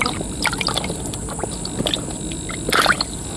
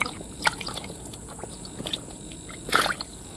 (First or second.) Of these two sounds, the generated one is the second